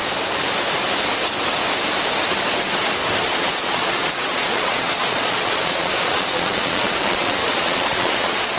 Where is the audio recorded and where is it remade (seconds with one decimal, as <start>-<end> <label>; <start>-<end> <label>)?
0.0-3.3 recorded; 3.3-8.6 remade